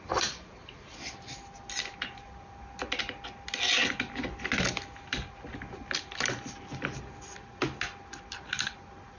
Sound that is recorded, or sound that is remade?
recorded